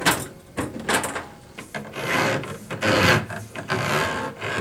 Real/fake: real